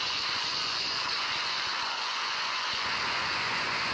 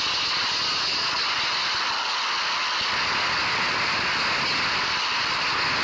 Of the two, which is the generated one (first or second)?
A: first